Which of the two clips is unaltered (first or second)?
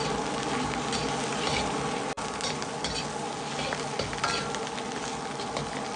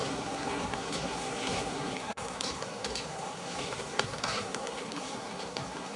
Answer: first